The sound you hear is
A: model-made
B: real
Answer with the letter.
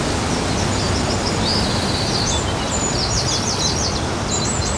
B